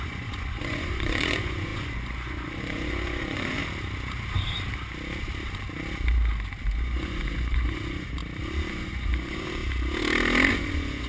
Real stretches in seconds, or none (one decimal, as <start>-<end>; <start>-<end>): 3.6-6.8; 8.2-8.7; 9.6-10.5